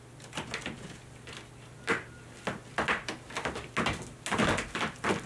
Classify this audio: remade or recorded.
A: recorded